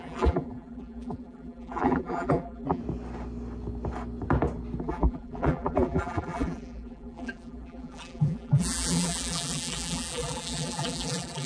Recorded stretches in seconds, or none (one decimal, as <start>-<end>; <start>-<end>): 2.8-4.8